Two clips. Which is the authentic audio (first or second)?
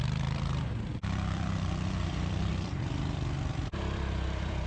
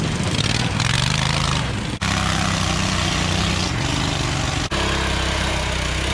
second